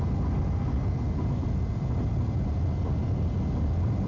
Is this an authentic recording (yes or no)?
yes